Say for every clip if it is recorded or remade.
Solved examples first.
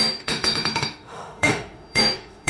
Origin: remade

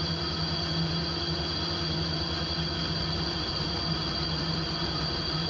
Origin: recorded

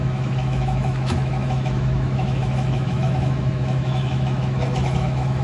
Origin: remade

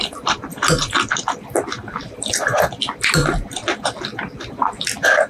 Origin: recorded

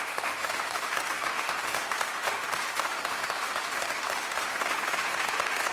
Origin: remade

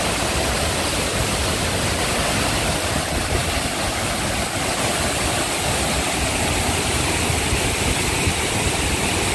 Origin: recorded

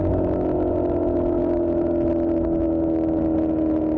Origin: recorded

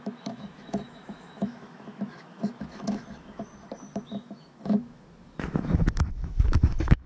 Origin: remade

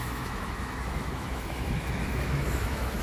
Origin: remade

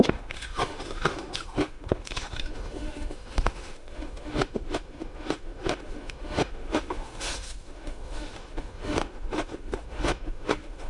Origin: remade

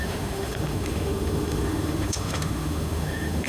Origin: remade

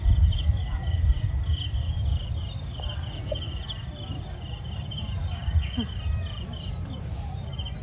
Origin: recorded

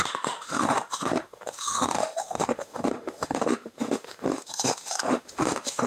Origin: remade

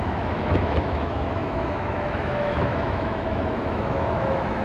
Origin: remade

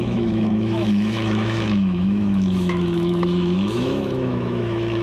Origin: remade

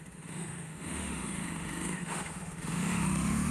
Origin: remade